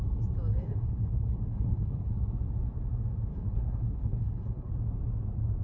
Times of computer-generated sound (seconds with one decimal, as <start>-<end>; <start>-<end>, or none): 0.5-2.1; 3.3-4.7